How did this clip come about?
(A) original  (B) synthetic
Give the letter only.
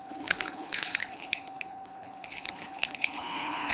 B